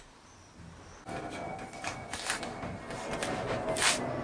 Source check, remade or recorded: recorded